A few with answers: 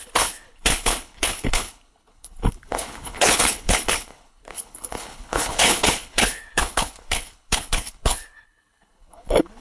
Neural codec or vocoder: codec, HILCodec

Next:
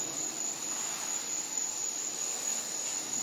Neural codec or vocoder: none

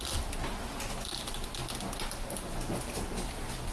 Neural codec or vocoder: none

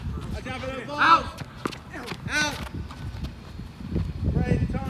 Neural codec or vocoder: none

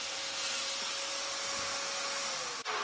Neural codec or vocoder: none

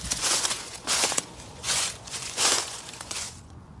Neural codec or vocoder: vocoder, Vocos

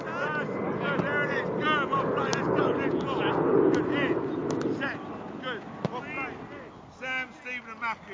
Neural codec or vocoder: none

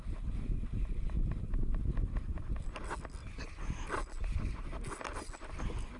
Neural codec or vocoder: none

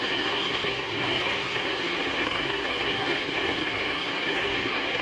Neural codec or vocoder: codec, SNAC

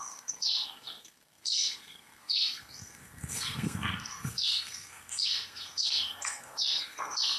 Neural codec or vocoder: codec, SNAC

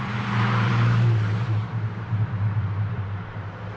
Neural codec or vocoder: vocoder, BigVGAN v2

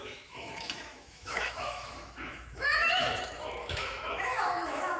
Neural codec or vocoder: autoencoder, DAC-VAE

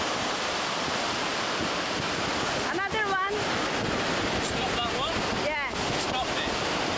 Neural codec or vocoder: none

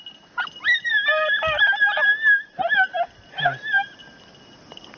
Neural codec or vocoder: none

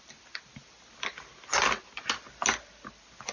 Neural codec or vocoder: none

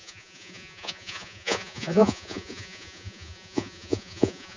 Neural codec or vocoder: vocoder, Vocos